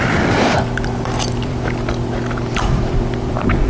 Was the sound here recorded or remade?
remade